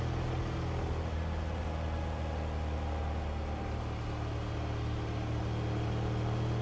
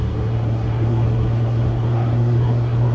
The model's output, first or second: second